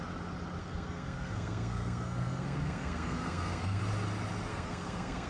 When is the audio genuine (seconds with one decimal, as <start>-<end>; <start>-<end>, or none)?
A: 0.0-0.6; 3.8-4.5

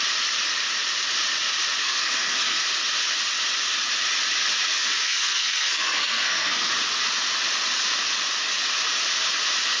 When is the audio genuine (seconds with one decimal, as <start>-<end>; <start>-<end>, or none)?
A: 0.0-1.8; 2.6-4.7; 6.7-9.8